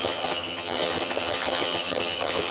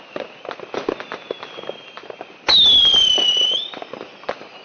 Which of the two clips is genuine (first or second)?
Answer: second